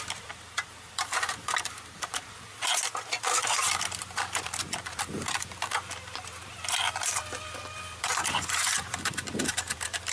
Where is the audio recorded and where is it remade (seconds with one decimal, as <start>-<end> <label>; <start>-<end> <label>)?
0.0-2.7 remade; 2.7-3.2 recorded; 3.2-10.1 remade